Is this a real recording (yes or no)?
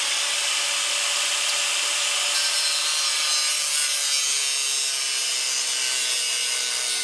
yes